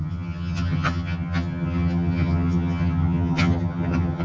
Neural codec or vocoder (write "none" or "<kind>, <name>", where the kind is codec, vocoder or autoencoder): vocoder, HiFi-GAN